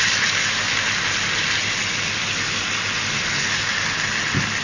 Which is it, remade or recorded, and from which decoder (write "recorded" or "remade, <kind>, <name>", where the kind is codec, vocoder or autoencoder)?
recorded